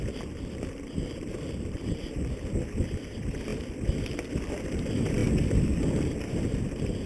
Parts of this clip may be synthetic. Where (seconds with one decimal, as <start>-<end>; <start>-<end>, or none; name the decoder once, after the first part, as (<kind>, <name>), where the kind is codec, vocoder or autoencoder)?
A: 0.0-7.1 (vocoder, BigVGAN v2)